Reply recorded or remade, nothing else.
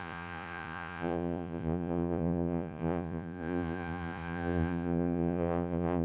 remade